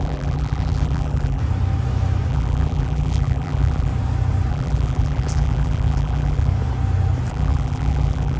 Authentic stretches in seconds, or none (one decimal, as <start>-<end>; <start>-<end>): 1.4-2.3; 3.9-4.5; 6.5-7.3